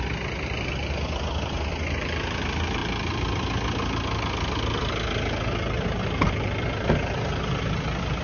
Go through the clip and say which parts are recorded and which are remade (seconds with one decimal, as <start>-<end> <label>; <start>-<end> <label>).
0.0-8.2 recorded